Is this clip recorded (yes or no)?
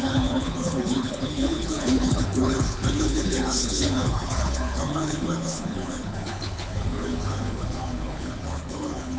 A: no